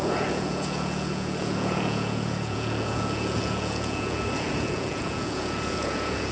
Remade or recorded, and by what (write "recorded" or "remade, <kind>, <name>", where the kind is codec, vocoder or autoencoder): remade, vocoder, Vocos